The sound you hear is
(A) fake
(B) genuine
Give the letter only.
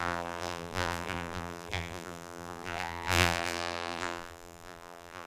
A